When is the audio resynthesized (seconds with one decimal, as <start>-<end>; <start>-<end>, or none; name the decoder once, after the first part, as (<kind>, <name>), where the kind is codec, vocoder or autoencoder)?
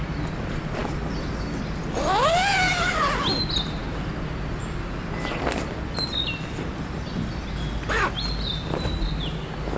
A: none